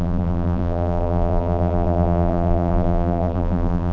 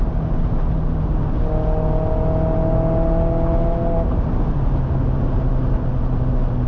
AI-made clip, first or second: first